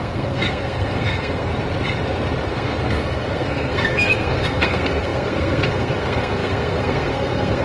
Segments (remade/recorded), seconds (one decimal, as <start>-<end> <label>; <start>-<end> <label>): 0.0-1.5 remade; 1.5-2.5 recorded; 2.5-7.6 remade